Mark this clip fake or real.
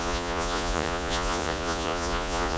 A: fake